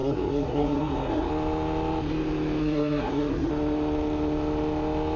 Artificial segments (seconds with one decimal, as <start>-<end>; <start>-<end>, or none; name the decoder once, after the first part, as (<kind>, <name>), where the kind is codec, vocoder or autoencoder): 0.0-1.3 (codec, SNAC); 2.6-3.5